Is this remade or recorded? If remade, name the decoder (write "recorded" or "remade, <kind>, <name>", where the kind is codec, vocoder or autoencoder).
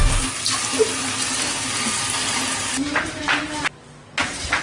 recorded